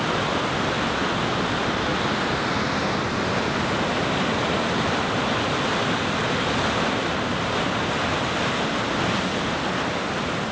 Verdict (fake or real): real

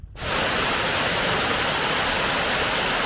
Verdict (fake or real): real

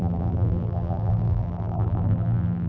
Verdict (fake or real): fake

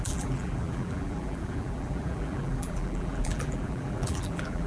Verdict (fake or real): fake